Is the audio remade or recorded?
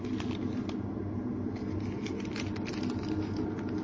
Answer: recorded